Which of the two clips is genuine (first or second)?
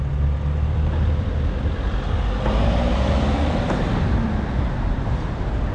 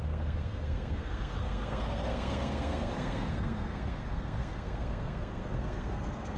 first